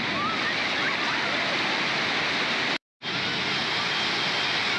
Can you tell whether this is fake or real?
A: real